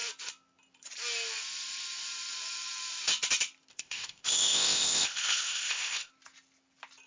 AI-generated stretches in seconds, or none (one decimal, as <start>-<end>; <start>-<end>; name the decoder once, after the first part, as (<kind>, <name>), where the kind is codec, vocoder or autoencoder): 3.7-6.1 (codec, ZipCodec)